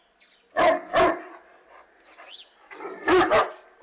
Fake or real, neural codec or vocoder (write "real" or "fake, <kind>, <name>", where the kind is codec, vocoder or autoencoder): real